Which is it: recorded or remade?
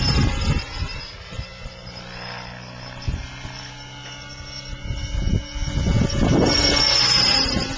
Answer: recorded